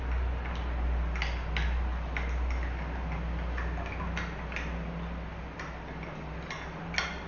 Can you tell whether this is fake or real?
real